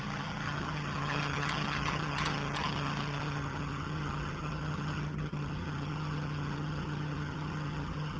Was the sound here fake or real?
fake